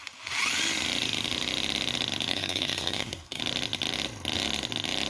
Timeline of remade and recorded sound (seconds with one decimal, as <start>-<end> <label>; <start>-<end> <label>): 0.0-2.3 recorded; 2.3-3.4 remade; 3.4-5.1 recorded